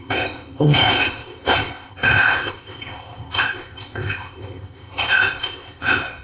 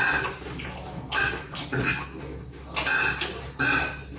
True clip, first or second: second